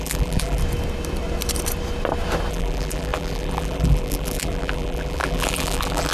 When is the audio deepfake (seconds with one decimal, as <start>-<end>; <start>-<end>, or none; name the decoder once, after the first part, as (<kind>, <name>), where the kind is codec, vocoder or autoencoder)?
0.0-0.6 (vocoder, BigVGAN v2); 2.5-6.1